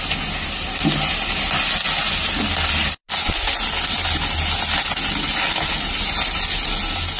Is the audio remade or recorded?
recorded